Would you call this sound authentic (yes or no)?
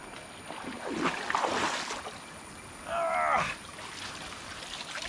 yes